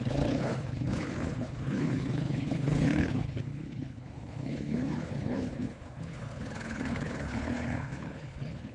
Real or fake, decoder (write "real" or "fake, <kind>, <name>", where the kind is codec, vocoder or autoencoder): fake, codec, HILCodec